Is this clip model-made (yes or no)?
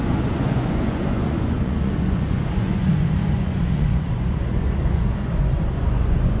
yes